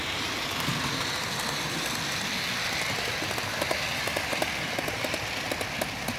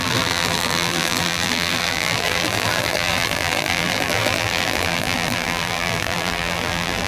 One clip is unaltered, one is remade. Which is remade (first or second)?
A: second